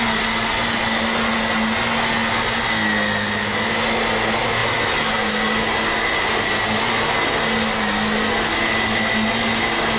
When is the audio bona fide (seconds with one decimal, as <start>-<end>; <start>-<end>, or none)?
0.0-10.0